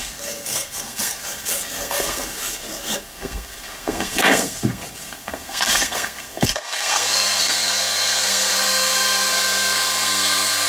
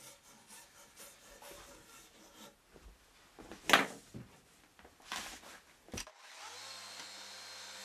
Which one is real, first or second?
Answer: second